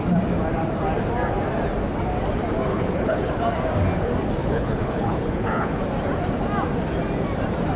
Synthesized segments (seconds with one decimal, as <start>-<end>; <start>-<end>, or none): 2.7-3.3; 4.4-5.8